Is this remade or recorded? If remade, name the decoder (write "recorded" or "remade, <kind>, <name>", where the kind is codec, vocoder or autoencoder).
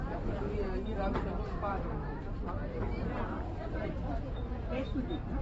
remade, vocoder, BigVGAN v2